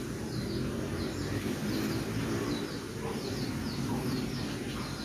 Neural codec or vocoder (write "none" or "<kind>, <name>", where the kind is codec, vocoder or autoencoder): none